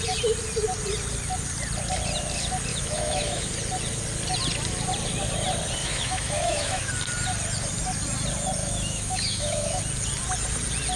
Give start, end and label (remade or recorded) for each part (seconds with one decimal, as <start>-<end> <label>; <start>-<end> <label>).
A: 0.0-2.7 recorded; 2.7-3.5 remade; 3.5-5.8 recorded; 5.8-6.9 remade; 6.9-8.6 recorded; 8.6-9.8 remade; 9.8-11.0 recorded